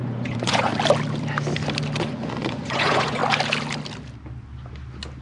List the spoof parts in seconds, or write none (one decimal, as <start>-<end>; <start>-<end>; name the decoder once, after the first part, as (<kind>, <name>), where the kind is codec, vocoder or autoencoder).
0.0-0.7 (vocoder, Vocos); 2.0-3.2